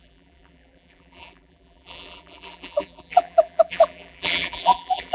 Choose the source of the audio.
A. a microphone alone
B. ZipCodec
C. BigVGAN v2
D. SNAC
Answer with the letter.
C